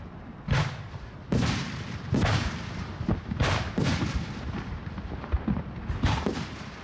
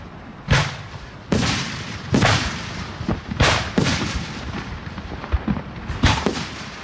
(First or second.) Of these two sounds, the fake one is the second